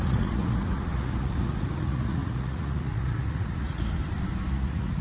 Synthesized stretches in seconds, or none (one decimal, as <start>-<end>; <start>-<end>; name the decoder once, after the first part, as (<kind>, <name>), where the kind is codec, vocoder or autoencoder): 0.0-4.0 (vocoder, Vocos); 4.5-5.0